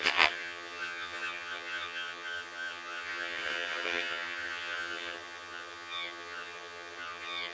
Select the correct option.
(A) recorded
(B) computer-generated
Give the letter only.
B